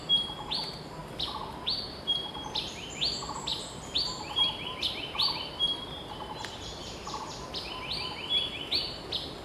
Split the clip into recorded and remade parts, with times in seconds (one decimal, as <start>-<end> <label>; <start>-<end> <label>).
0.0-1.0 recorded; 1.0-3.0 remade; 3.0-3.5 recorded; 3.5-7.9 remade; 7.9-9.4 recorded